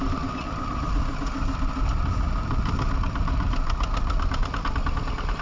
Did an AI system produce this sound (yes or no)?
no